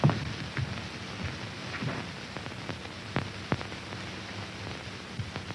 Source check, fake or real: real